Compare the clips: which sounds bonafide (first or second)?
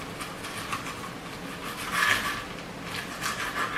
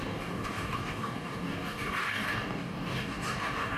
first